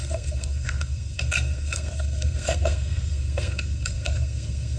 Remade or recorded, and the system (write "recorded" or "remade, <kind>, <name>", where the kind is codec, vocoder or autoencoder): remade, codec, SNAC